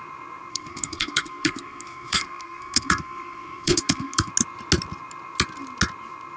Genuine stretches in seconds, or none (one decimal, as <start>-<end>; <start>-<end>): 0.0-0.5; 4.3-6.4